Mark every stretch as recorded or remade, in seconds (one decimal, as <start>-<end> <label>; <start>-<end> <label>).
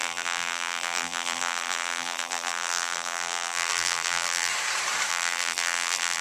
0.0-4.5 remade; 4.5-5.1 recorded; 5.1-6.2 remade